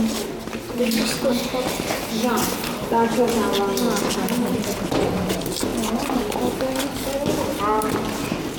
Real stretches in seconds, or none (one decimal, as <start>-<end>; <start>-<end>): 0.0-8.6